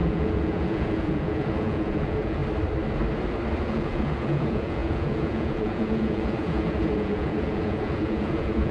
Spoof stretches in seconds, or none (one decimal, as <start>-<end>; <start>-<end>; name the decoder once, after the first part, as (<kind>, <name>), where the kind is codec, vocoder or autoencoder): 0.0-2.4 (vocoder, Vocos); 3.6-8.7